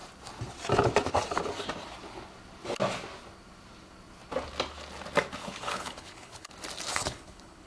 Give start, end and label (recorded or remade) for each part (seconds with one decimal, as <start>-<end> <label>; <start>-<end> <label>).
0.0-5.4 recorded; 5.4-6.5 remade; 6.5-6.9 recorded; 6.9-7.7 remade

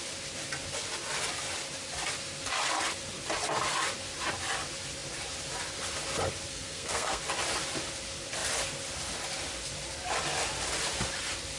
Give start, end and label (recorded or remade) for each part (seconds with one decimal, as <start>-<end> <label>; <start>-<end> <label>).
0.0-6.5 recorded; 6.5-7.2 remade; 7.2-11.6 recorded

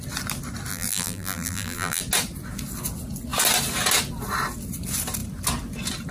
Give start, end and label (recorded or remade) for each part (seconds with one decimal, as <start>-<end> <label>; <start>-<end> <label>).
0.0-0.7 recorded; 0.7-2.0 remade; 2.0-6.1 recorded

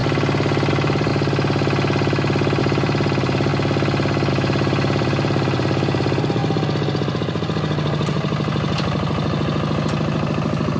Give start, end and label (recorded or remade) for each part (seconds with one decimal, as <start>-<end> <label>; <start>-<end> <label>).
0.0-0.7 recorded; 0.7-1.1 remade; 1.1-2.6 recorded; 2.6-3.5 remade; 3.5-4.3 recorded; 4.3-6.4 remade; 6.4-10.8 recorded

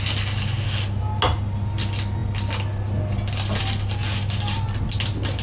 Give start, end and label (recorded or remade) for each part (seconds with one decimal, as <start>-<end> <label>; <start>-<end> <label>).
0.0-5.4 recorded